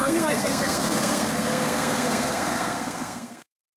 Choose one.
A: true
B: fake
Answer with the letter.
B